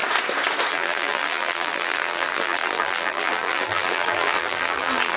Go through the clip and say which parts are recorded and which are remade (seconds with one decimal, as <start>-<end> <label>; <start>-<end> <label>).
0.0-0.7 recorded; 0.7-5.2 remade

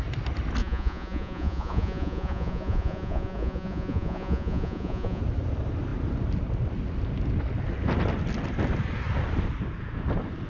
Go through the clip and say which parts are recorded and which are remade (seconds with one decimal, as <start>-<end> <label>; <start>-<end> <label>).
0.0-0.6 recorded; 0.6-5.2 remade; 5.2-10.5 recorded

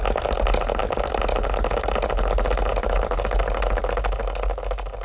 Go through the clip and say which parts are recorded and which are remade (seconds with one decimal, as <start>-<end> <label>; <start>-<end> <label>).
0.0-5.0 recorded

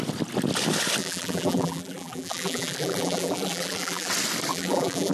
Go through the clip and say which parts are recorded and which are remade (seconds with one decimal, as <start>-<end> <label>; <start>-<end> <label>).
0.0-1.0 recorded; 1.0-4.1 remade; 4.1-4.5 recorded; 4.5-5.1 remade

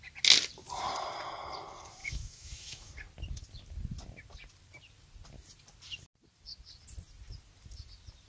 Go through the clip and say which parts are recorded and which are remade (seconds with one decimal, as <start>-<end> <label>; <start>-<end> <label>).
0.0-2.0 recorded; 2.0-2.9 remade; 2.9-8.3 recorded

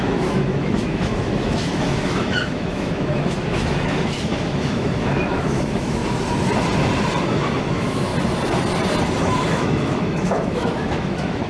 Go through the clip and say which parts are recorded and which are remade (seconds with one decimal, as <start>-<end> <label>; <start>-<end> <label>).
0.0-6.0 remade; 6.0-7.6 recorded; 7.6-8.1 remade; 8.1-9.2 recorded; 9.2-11.5 remade

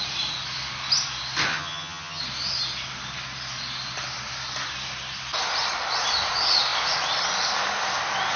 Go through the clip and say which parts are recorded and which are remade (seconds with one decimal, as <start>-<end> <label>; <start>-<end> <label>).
0.0-1.5 recorded; 1.5-2.2 remade; 2.2-8.4 recorded

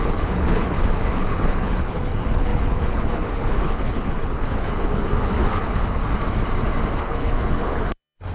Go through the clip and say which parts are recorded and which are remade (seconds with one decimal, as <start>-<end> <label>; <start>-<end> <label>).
0.0-6.0 remade; 6.0-7.0 recorded; 7.0-8.3 remade